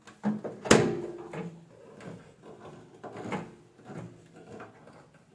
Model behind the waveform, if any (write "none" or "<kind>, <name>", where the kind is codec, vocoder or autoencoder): none